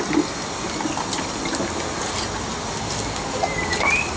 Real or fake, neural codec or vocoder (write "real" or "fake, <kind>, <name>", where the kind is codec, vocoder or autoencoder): real